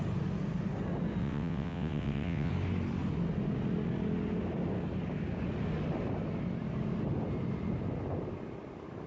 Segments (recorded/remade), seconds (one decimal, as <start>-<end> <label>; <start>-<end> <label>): 0.0-1.2 recorded; 1.2-2.5 remade; 2.5-9.1 recorded